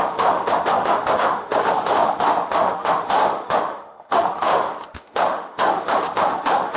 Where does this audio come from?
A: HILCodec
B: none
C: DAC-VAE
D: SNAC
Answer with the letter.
C